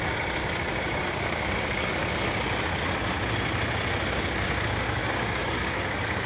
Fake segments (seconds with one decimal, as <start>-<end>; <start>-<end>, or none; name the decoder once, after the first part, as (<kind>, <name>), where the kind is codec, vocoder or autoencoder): 0.7-1.9 (codec, DAC); 5.0-5.8